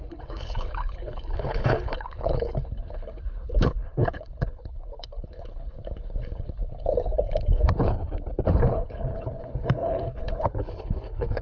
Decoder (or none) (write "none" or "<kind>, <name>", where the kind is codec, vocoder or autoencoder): codec, HILCodec